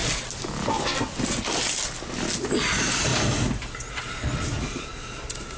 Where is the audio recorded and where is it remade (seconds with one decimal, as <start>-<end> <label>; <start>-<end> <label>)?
0.0-5.6 recorded